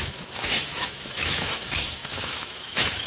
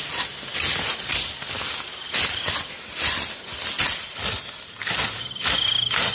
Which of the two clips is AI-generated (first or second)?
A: first